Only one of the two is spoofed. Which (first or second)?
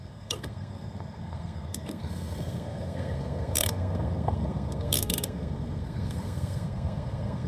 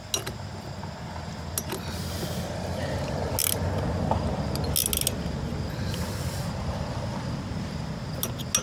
first